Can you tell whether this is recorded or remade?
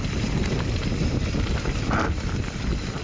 recorded